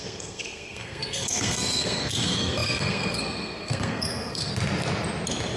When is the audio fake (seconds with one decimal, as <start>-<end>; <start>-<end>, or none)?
0.0-4.5